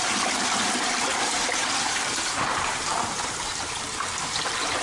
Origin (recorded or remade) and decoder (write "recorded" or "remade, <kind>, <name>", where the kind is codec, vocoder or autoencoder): remade, vocoder, BigVGAN v2